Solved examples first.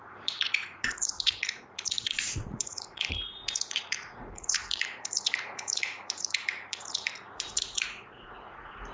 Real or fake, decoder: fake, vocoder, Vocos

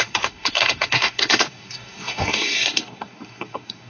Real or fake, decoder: fake, codec, SNAC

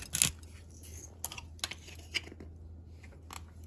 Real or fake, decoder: real